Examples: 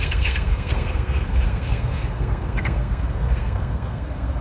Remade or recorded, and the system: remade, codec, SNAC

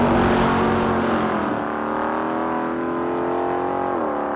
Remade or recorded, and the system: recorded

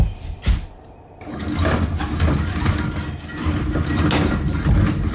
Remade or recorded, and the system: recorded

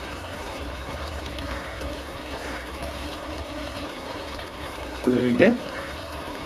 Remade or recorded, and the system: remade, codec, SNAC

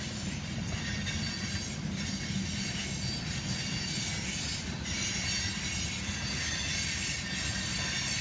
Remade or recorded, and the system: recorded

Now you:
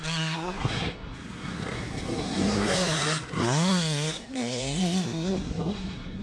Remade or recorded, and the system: remade, codec, SNAC